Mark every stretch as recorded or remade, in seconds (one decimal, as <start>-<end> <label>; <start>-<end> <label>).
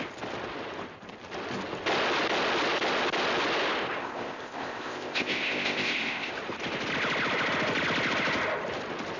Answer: 0.0-4.0 recorded; 4.0-6.3 remade; 6.3-9.2 recorded